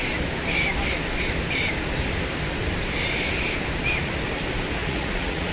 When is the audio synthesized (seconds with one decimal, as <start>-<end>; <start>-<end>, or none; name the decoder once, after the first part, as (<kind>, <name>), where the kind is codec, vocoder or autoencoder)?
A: 4.8-5.5 (vocoder, Vocos)